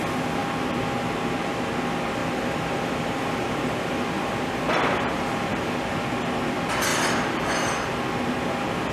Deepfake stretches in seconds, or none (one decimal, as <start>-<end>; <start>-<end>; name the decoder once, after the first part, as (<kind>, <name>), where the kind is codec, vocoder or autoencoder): 2.2-5.8 (vocoder, BigVGAN v2); 6.9-7.5